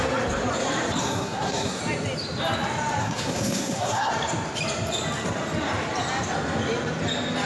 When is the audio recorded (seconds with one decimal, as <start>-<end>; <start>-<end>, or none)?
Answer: 0.0-1.0; 1.8-3.0; 4.1-7.5